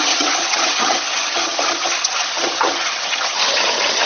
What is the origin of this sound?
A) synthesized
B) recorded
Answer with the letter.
A